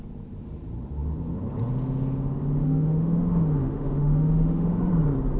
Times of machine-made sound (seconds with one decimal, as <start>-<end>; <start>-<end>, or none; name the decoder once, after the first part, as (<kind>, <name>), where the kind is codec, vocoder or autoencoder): 2.6-4.9 (autoencoder, DAC-VAE)